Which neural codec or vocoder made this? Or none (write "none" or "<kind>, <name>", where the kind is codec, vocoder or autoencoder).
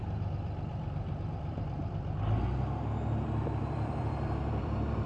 vocoder, BigVGAN v2